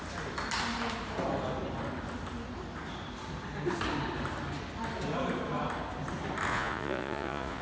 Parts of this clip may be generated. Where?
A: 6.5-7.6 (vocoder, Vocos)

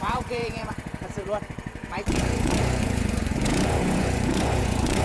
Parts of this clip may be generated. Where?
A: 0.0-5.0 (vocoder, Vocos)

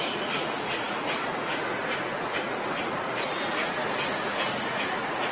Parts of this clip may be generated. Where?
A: 0.0-5.3 (vocoder, Vocos)

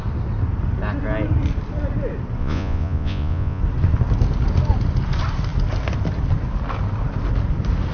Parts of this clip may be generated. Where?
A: 2.4-3.6 (vocoder, Vocos)

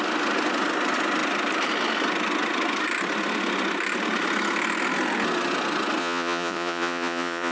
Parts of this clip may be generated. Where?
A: 6.0-7.5 (vocoder, Vocos)

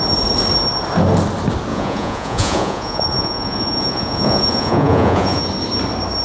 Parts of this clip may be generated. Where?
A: 1.7-5.4 (vocoder, Vocos)

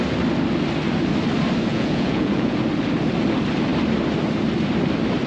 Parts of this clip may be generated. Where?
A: 1.7-2.6 (vocoder, Vocos)

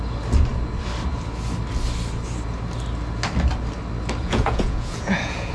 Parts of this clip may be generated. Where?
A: 4.2-5.5 (vocoder, Vocos)